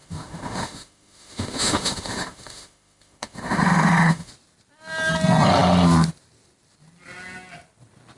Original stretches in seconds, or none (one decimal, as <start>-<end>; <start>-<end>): 4.3-8.2